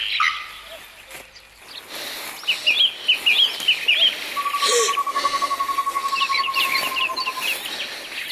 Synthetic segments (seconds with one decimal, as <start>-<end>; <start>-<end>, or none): 5.0-6.1

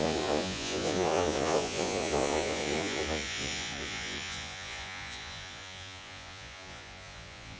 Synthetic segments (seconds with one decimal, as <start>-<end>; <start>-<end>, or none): 0.0-7.6